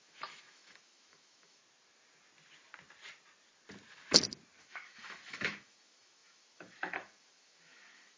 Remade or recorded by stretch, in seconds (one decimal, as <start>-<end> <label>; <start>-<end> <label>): 0.0-1.6 remade; 1.6-4.6 recorded; 4.6-8.2 remade